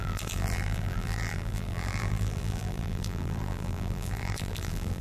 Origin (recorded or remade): remade